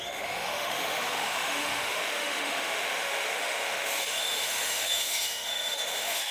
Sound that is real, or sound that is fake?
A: fake